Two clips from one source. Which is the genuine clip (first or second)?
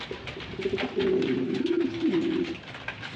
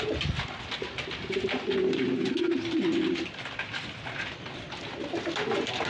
second